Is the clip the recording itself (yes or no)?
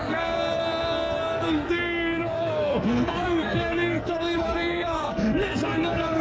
no